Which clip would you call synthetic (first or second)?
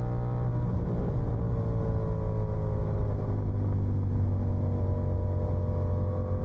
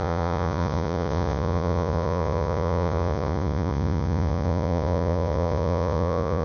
second